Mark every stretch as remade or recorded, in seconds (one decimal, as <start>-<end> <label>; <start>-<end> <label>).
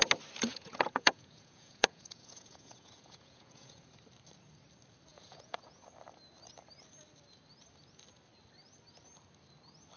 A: 0.0-0.5 recorded; 0.5-3.9 remade; 3.9-5.1 recorded; 5.1-5.9 remade; 5.9-10.0 recorded